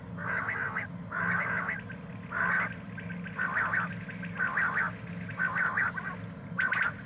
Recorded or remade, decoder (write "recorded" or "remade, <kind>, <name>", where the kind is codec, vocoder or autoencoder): recorded